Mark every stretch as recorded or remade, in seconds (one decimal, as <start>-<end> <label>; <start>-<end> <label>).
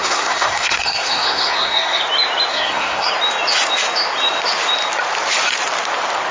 0.0-2.0 remade; 2.0-2.5 recorded; 2.5-3.1 remade; 3.1-6.3 recorded